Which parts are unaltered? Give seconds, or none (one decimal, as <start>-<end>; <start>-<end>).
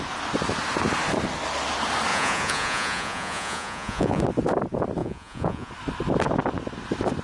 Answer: 0.0-2.1; 4.2-5.0; 5.7-7.2